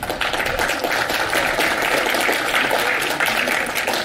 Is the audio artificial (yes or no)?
no